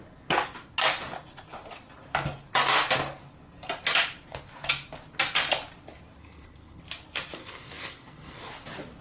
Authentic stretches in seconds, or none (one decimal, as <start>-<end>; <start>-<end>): 0.0-6.2; 6.8-7.4; 8.5-9.0